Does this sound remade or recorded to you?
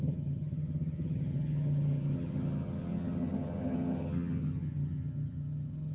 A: remade